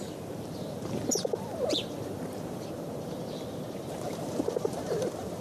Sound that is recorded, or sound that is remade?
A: remade